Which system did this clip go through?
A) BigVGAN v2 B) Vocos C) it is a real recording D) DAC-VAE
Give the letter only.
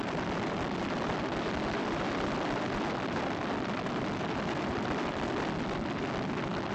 A